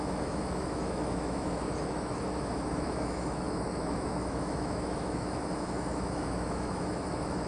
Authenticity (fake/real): fake